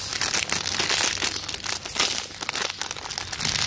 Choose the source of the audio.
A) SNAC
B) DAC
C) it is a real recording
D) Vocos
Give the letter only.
C